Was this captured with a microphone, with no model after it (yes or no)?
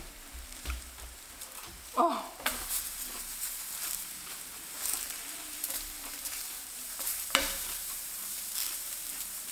no